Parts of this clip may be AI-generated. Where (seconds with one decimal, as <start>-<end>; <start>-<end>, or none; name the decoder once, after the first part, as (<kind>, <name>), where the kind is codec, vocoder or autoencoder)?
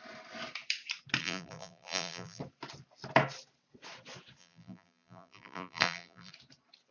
1.2-2.4 (vocoder, BigVGAN v2); 4.4-6.3